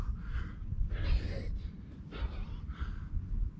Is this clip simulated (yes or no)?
no